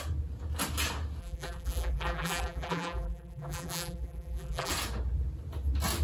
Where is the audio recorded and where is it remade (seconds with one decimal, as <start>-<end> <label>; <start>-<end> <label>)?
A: 0.0-1.2 recorded; 1.2-4.7 remade; 4.7-6.0 recorded

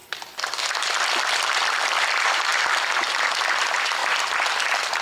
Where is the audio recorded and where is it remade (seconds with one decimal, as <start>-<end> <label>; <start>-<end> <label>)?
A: 0.0-0.8 recorded; 0.8-2.5 remade; 2.5-3.1 recorded; 3.1-4.0 remade; 4.0-5.0 recorded